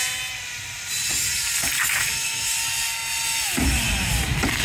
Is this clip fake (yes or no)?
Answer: no